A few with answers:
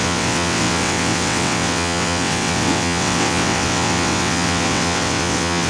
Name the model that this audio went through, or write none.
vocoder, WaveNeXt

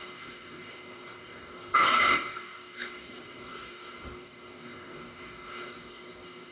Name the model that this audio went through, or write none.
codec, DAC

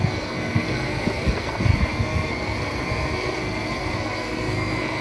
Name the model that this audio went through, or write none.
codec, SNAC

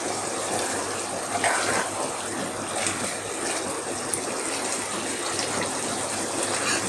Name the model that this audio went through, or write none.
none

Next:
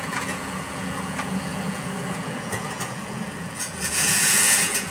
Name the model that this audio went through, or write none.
vocoder, Vocos